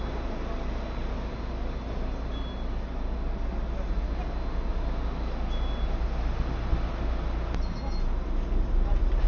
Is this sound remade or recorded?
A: recorded